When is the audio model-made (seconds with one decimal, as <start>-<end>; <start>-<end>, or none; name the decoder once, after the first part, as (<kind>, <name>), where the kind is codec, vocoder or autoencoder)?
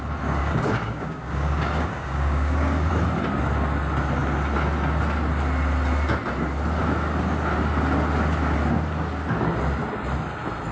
0.4-2.9 (codec, DAC)